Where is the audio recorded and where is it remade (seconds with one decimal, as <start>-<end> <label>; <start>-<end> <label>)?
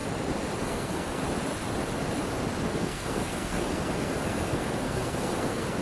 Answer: 0.0-0.6 recorded; 0.6-1.2 remade; 1.2-2.7 recorded; 2.7-5.8 remade